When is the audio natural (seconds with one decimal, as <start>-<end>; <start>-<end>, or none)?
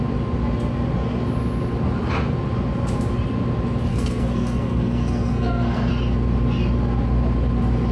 0.0-3.9; 5.9-7.9